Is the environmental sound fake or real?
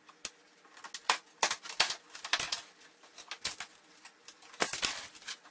real